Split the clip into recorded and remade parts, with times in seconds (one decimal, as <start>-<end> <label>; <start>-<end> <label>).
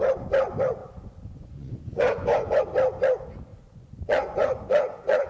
0.0-0.8 recorded; 0.8-2.6 remade; 2.6-3.5 recorded; 3.5-5.3 remade